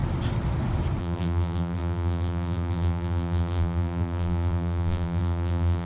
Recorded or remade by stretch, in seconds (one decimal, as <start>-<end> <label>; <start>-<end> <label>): 0.0-1.0 recorded; 1.0-5.8 remade